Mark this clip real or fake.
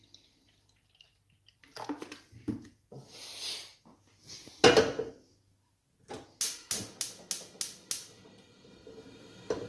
real